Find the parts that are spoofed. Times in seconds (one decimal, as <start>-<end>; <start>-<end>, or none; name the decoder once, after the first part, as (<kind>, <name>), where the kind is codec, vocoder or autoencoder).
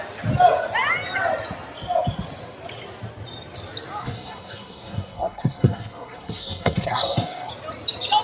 4.0-7.5 (codec, SNAC)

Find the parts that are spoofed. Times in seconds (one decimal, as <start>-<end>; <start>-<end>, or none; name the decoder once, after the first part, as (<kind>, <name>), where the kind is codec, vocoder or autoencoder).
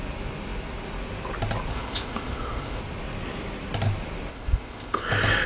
1.7-2.8 (codec, ZipCodec); 4.3-5.1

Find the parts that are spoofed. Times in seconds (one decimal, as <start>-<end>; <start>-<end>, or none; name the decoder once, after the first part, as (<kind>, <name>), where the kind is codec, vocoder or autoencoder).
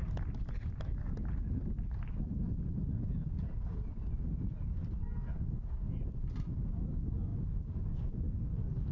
2.0-8.9 (vocoder, BigVGAN v2)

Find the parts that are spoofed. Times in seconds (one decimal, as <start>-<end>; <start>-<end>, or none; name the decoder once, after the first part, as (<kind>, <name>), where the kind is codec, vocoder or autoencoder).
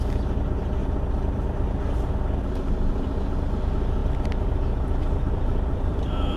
0.8-2.3 (vocoder, BigVGAN v2); 4.0-6.4